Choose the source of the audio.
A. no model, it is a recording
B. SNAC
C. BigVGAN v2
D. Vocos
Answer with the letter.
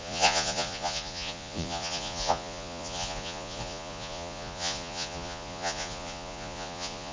D